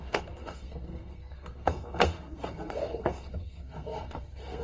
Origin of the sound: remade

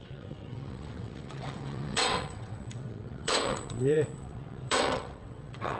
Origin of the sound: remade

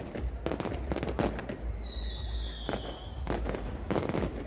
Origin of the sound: recorded